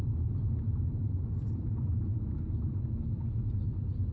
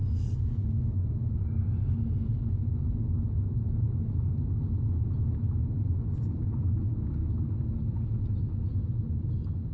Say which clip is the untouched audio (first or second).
second